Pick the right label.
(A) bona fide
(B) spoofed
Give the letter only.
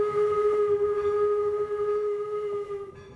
B